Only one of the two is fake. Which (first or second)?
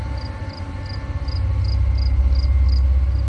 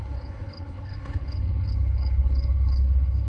second